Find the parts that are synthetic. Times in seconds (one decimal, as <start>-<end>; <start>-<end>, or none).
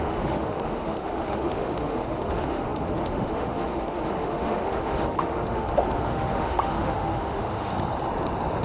0.0-7.7